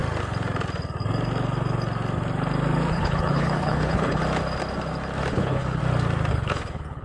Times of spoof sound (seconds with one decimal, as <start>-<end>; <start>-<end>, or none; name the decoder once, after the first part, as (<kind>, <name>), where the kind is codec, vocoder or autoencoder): 2.9-4.2 (codec, HILCodec); 5.3-5.8; 6.3-7.0